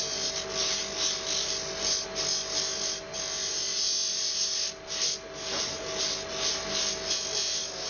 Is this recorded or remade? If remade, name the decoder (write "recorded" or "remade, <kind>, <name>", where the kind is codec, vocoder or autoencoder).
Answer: recorded